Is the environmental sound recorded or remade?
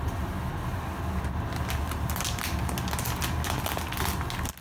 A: recorded